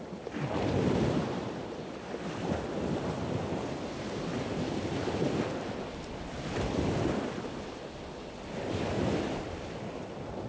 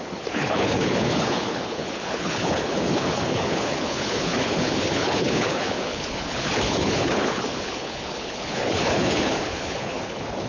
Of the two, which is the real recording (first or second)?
first